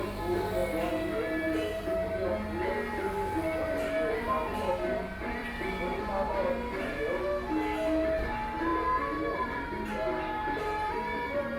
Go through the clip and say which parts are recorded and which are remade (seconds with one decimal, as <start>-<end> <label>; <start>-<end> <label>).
0.0-5.4 recorded; 5.4-6.0 remade; 6.0-11.6 recorded